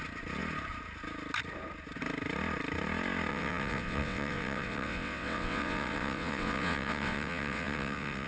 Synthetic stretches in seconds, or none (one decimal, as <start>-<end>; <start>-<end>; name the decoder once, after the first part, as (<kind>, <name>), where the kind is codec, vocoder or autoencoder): 3.3-8.3 (vocoder, WaveNeXt)